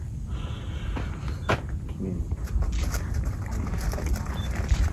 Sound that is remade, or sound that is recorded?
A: recorded